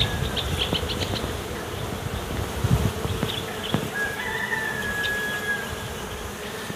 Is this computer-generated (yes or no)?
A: no